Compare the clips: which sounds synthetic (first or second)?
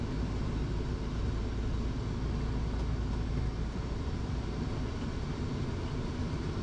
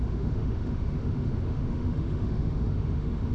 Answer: second